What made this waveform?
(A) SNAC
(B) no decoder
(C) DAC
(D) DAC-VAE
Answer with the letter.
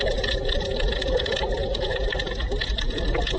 B